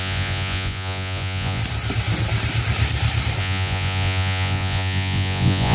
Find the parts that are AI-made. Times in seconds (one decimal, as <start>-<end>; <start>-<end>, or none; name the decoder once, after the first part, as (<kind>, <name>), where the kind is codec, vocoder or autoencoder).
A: 0.0-1.6 (vocoder, Vocos); 3.4-5.7